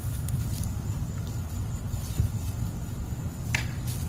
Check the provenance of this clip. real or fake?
fake